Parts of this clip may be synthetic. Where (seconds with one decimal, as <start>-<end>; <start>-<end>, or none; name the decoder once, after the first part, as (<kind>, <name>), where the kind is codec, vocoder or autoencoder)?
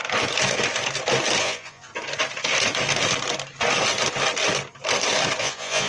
1.4-1.9 (vocoder, Vocos); 5.4-5.9